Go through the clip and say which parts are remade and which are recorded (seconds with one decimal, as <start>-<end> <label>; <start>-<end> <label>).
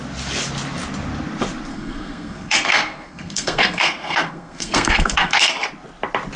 0.0-1.7 recorded; 1.7-5.5 remade; 5.5-6.4 recorded